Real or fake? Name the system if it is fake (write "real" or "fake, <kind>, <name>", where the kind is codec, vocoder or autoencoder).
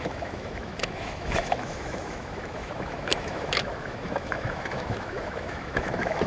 fake, autoencoder, DAC-VAE